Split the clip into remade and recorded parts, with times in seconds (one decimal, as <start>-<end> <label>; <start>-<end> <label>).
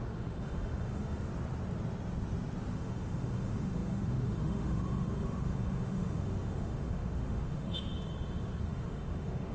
0.0-1.3 remade; 1.3-2.7 recorded; 2.7-7.9 remade; 7.9-8.6 recorded; 8.6-9.5 remade